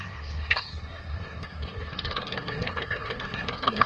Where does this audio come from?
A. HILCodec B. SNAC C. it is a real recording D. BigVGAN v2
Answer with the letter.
B